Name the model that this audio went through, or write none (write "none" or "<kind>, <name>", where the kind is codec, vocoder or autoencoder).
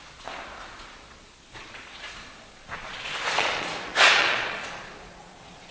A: vocoder, Vocos